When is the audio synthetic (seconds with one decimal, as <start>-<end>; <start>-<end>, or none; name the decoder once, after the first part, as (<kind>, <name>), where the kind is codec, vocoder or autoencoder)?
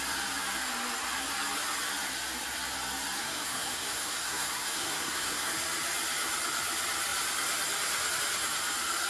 3.2-5.5 (codec, SNAC)